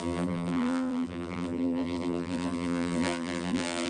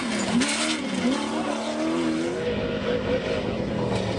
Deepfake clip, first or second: first